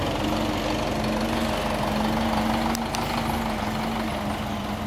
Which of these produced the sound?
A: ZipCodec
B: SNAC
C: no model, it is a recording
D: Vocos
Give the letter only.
C